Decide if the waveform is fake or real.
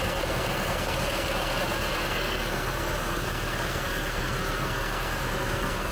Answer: fake